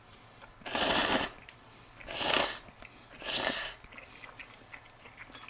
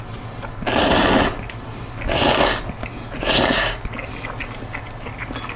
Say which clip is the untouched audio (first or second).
second